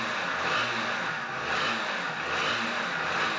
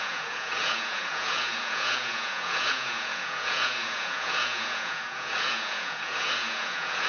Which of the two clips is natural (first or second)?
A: first